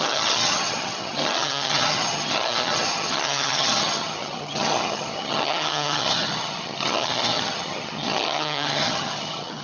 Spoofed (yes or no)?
yes